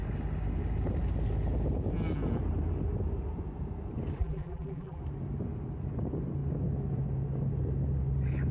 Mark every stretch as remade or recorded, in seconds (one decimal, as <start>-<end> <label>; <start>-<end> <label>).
0.0-4.2 recorded; 4.2-5.0 remade; 5.0-8.5 recorded